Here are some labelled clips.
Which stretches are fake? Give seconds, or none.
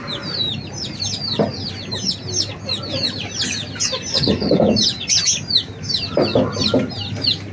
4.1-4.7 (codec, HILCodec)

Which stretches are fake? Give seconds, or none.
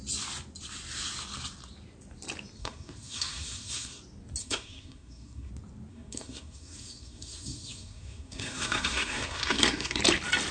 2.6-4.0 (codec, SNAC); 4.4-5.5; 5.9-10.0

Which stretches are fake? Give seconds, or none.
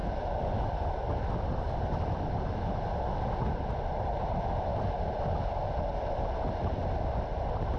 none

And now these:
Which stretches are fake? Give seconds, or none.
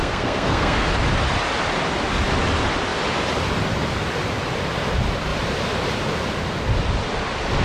0.0-0.9 (codec, SNAC)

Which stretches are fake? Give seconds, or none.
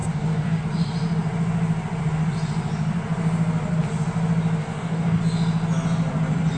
0.0-0.6 (codec, DAC); 4.6-5.2